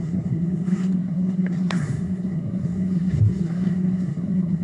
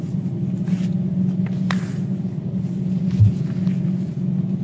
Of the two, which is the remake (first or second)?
first